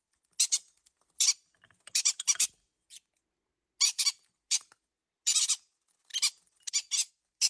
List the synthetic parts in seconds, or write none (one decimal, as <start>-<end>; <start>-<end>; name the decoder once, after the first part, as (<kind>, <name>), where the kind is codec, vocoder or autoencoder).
none